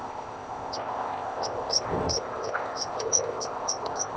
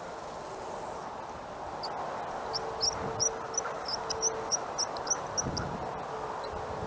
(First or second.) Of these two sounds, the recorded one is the second